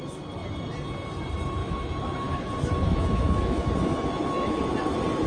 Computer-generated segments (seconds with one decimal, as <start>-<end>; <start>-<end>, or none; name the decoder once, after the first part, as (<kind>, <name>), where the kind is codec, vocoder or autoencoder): 1.6-4.6 (autoencoder, DAC-VAE)